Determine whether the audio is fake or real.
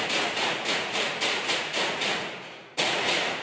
fake